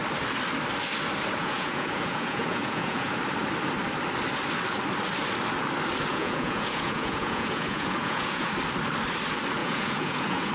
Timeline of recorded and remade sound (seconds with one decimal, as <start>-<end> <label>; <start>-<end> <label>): 0.0-1.4 recorded; 1.4-3.2 remade; 3.2-6.1 recorded; 6.1-8.5 remade; 8.5-9.6 recorded; 9.6-10.5 remade